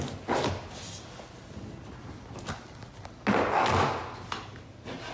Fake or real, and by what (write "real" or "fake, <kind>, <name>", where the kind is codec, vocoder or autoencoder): real